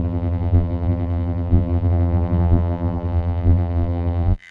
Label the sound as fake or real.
fake